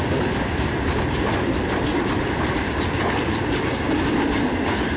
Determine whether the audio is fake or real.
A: real